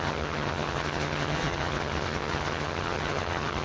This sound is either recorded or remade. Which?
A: remade